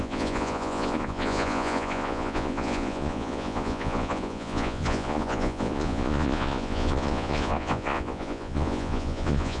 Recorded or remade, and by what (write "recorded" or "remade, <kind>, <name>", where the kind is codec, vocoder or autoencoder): remade, vocoder, Vocos